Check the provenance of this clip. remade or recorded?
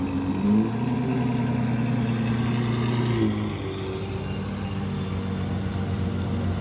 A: recorded